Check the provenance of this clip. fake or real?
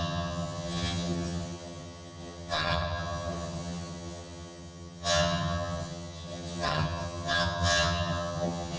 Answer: fake